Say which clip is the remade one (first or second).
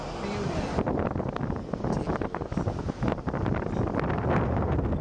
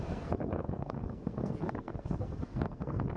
second